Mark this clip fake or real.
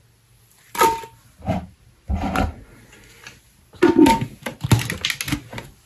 real